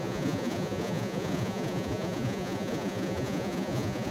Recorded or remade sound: remade